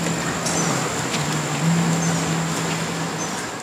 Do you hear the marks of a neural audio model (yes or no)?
no